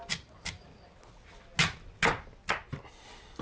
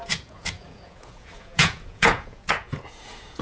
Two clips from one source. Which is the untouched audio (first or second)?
first